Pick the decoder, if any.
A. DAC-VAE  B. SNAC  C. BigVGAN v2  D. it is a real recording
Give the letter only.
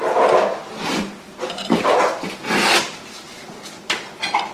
D